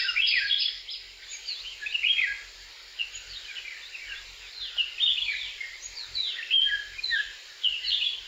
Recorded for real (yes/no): yes